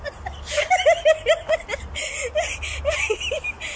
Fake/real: real